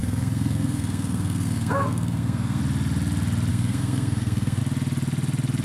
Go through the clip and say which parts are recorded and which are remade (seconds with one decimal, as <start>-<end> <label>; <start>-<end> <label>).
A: 0.0-2.6 remade; 2.6-3.5 recorded; 3.5-4.6 remade; 4.6-5.6 recorded